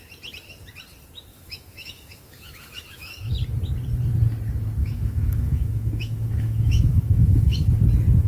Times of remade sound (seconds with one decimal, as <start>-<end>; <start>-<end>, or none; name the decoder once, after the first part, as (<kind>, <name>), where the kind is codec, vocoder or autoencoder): 1.3-3.3 (autoencoder, DAC-VAE); 4.8-7.7